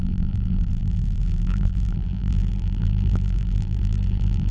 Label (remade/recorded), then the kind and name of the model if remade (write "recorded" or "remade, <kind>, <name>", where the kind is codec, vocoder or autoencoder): remade, vocoder, BigVGAN v2